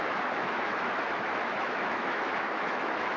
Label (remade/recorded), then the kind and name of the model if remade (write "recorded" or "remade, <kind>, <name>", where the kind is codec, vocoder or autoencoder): remade, autoencoder, DAC-VAE